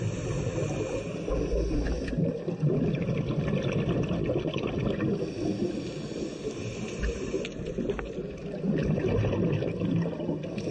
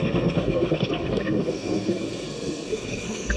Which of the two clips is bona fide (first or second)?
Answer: first